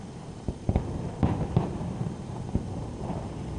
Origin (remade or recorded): remade